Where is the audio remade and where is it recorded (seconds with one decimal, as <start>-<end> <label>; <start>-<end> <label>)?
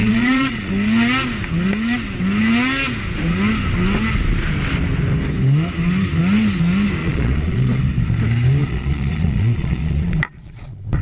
0.0-0.7 remade; 0.7-7.0 recorded; 7.0-7.8 remade; 7.8-8.6 recorded; 8.6-11.0 remade